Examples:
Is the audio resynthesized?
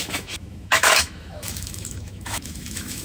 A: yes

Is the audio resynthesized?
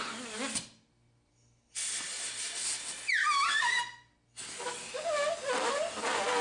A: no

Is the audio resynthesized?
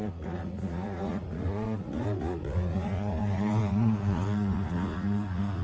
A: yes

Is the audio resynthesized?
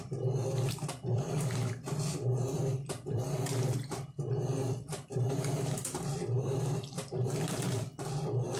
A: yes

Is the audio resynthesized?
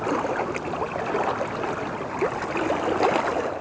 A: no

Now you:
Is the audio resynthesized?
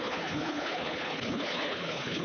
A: yes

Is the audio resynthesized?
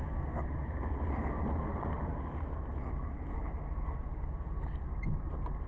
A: no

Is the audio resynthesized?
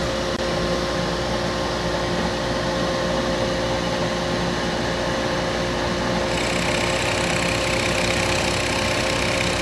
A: no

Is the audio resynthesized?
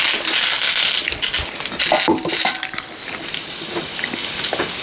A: no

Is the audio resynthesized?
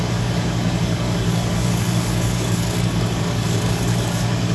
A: yes